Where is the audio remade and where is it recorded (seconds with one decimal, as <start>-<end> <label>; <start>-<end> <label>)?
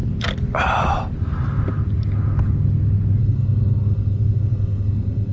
0.0-3.2 recorded; 3.2-5.3 remade